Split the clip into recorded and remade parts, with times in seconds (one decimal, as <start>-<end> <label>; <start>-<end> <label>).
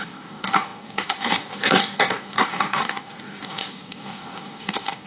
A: 0.0-5.1 remade